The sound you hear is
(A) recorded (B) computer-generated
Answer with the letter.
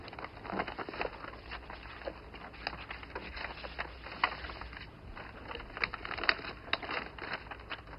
A